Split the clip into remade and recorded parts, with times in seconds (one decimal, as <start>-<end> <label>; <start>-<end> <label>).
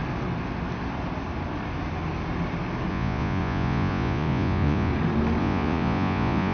0.0-2.9 recorded; 2.9-4.9 remade; 4.9-5.4 recorded; 5.4-6.5 remade